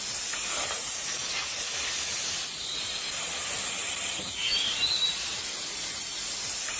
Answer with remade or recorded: recorded